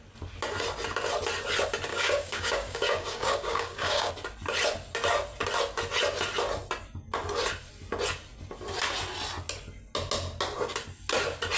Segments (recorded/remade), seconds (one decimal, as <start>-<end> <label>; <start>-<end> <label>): 0.0-1.9 recorded; 1.9-4.1 remade; 4.1-11.6 recorded